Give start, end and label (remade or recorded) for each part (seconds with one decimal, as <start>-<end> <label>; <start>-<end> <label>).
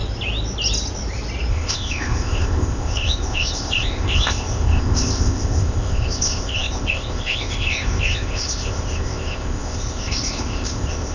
0.0-1.5 recorded; 1.5-11.1 remade